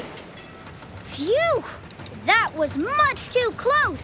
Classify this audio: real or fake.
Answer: real